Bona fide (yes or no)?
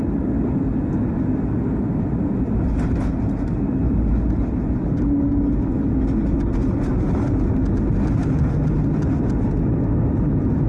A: yes